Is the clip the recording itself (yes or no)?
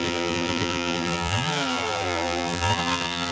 no